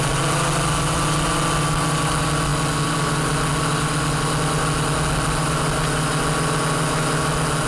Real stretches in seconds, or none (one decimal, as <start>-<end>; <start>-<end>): 0.0-7.7